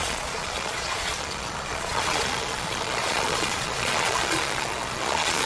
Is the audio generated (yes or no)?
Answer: yes